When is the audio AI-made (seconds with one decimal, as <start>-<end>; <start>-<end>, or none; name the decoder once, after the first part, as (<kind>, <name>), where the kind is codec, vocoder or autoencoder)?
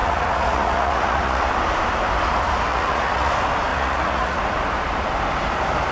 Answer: 0.0-1.5 (vocoder, Vocos); 2.7-3.3; 3.7-4.4